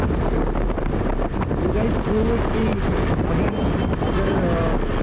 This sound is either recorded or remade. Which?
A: recorded